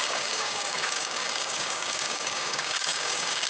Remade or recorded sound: remade